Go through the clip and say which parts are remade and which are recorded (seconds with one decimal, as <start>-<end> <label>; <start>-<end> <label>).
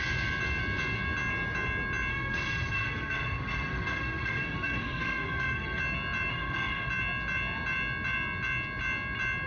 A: 0.0-2.1 recorded; 2.1-5.8 remade; 5.8-6.3 recorded; 6.3-6.9 remade; 6.9-9.5 recorded